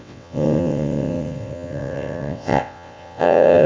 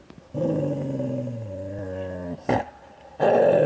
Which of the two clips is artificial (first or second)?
first